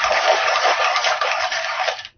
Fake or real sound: fake